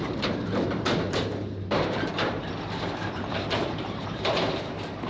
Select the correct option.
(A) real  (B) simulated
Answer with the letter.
B